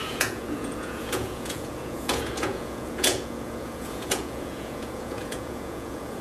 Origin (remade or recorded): remade